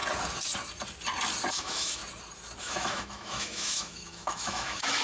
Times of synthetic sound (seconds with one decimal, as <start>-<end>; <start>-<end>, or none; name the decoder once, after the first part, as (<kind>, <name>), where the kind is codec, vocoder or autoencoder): 1.5-2.0 (autoencoder, DAC-VAE); 2.6-5.0